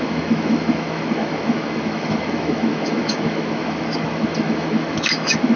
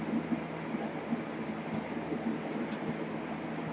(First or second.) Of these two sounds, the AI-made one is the first